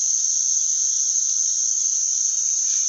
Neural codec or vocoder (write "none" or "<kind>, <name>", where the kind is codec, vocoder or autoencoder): vocoder, BigVGAN v2